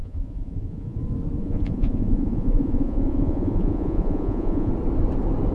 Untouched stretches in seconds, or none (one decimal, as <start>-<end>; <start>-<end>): 1.0-1.4; 4.7-5.5